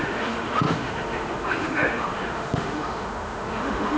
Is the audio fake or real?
fake